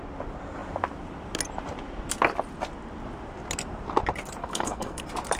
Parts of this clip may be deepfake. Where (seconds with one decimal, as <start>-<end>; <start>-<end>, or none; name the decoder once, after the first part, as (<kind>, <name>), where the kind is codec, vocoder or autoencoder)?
4.4-5.0 (codec, SNAC)